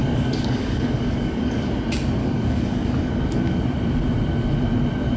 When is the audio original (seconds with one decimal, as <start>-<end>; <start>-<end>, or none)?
1.7-2.2; 3.4-5.2